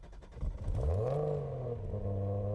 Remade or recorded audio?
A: recorded